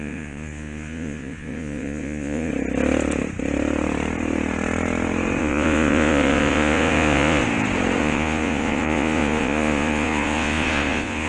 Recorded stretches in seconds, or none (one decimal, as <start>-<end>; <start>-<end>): 2.5-5.4; 7.4-8.0